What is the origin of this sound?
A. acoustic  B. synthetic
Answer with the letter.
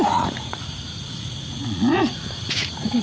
B